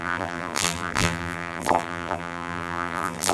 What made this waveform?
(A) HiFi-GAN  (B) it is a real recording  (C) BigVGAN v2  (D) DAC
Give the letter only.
C